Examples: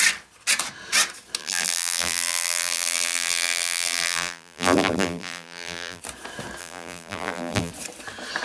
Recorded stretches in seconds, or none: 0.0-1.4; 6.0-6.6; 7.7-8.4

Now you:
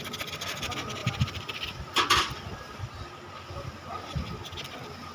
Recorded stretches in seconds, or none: 0.0-1.0; 3.2-5.1